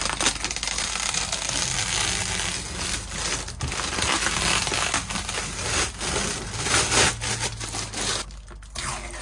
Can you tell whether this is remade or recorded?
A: recorded